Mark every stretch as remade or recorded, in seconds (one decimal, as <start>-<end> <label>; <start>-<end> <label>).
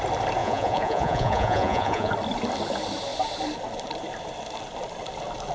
0.0-0.4 recorded; 0.4-2.1 remade; 2.1-5.5 recorded